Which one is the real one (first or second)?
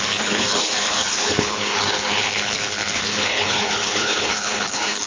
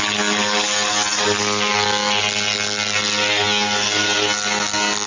second